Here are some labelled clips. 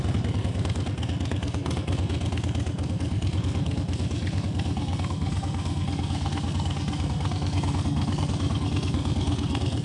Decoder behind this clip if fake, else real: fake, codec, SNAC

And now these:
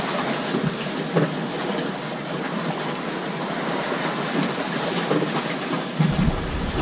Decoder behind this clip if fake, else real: real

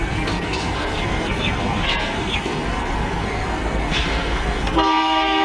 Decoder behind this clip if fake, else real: fake, codec, SNAC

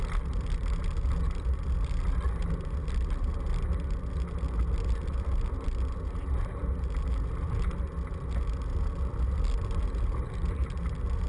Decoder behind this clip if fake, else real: real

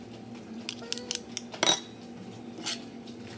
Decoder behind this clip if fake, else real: real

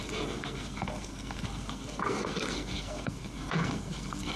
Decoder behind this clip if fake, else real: fake, codec, SNAC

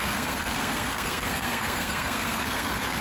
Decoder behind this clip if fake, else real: fake, codec, SNAC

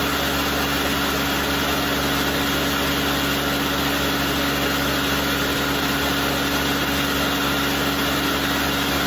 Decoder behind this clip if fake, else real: real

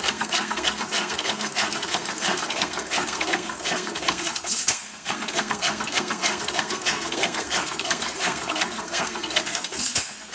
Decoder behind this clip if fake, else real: fake, codec, SNAC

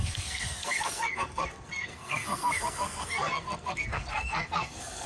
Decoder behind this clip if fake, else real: fake, codec, SNAC